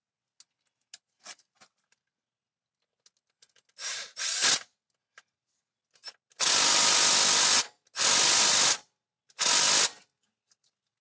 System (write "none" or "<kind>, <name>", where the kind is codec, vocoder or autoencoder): none